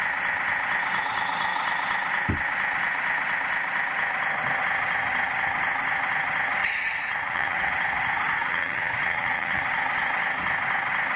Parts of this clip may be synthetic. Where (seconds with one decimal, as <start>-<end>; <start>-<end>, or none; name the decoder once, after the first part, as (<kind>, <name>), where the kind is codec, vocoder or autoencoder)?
6.6-7.7 (vocoder, Vocos); 8.4-9.6